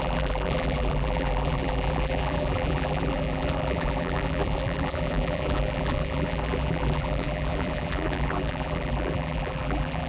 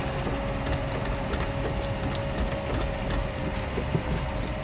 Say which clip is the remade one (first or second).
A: first